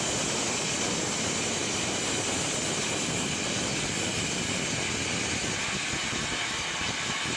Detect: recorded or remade recorded